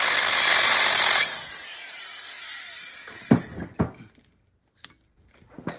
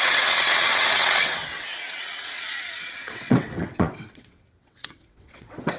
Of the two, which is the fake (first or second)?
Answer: second